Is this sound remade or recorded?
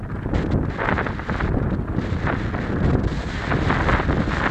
recorded